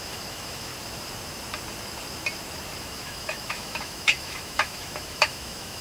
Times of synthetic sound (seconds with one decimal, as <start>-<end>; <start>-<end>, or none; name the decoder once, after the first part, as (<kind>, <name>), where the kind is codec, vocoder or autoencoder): 0.0-0.7 (autoencoder, DAC-VAE); 2.8-5.8